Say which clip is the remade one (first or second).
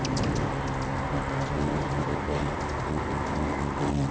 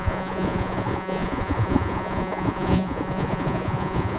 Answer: second